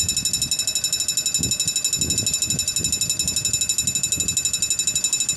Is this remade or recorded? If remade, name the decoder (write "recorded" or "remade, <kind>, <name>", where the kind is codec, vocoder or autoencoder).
recorded